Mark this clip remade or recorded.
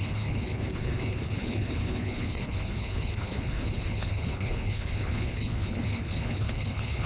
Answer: remade